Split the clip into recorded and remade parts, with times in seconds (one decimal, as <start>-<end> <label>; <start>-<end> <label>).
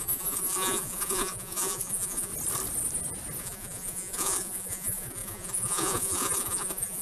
0.0-2.3 remade; 2.3-3.4 recorded; 3.4-7.0 remade